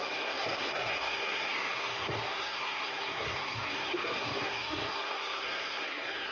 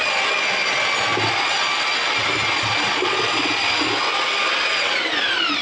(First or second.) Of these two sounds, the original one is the second